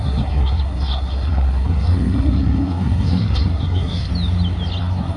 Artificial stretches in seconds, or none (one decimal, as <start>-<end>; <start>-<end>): 0.0-4.1; 4.8-5.2